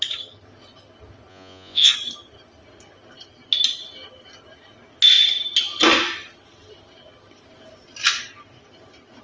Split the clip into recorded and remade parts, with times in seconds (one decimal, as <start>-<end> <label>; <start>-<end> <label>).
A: 0.0-1.3 recorded; 1.3-1.9 remade; 1.9-9.2 recorded